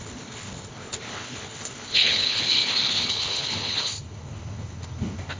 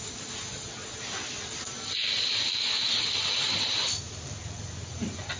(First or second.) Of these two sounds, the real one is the second